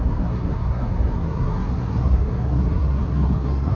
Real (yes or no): no